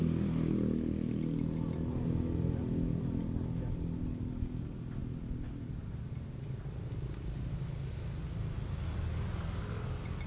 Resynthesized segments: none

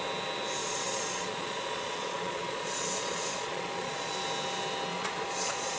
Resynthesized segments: 0.6-4.1 (vocoder, Vocos); 4.9-5.8

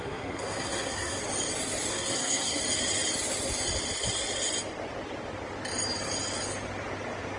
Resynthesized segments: 0.0-1.2 (codec, SNAC); 1.9-2.6

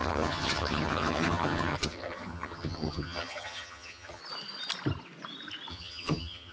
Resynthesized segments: 0.0-4.2 (vocoder, HiFi-GAN); 5.7-6.5

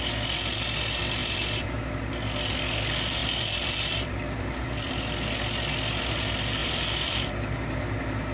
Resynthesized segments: 1.2-1.8 (vocoder, BigVGAN v2); 3.2-4.9; 6.6-7.3

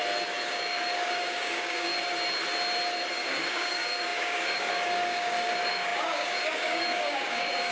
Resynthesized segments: 0.5-1.9 (codec, DAC); 3.1-7.7

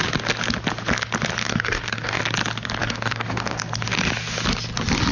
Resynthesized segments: 1.4-2.2 (codec, DAC); 2.8-3.6